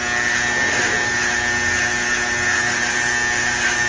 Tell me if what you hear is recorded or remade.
recorded